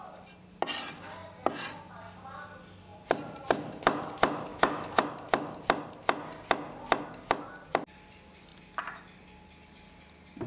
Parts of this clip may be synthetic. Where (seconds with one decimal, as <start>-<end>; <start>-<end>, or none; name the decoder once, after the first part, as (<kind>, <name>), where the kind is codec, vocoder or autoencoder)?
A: 4.5-5.0 (autoencoder, DAC-VAE)